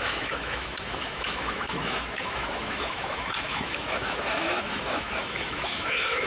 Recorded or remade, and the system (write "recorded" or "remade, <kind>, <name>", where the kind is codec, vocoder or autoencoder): remade, autoencoder, DAC-VAE